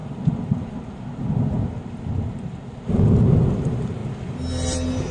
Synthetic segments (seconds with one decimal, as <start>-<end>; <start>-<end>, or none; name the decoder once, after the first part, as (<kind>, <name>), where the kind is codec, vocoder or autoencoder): 3.1-4.0 (vocoder, BigVGAN v2)